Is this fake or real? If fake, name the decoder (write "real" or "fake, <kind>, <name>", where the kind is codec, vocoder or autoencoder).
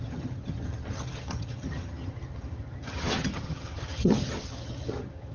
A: fake, vocoder, HiFi-GAN